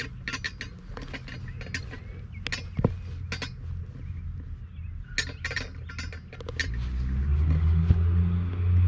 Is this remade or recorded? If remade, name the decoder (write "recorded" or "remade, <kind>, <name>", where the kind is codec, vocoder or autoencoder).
recorded